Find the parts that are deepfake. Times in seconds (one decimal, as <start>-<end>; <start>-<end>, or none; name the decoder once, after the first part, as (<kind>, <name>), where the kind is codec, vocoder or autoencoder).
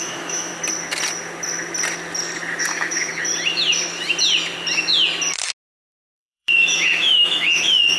0.0-0.5 (autoencoder, DAC-VAE); 2.6-3.1; 5.9-8.0